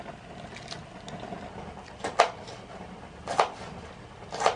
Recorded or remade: recorded